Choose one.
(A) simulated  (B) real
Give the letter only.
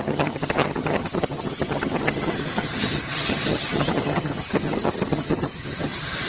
A